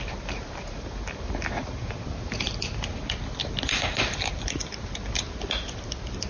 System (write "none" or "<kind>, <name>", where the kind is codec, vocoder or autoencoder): none